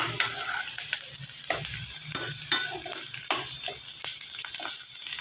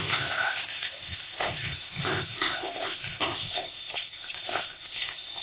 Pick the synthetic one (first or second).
second